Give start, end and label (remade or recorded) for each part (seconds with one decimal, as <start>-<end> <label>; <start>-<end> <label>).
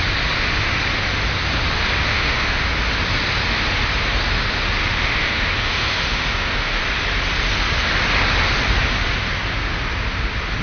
0.0-2.1 recorded; 2.1-2.6 remade; 2.6-4.8 recorded; 4.8-6.8 remade; 6.8-10.6 recorded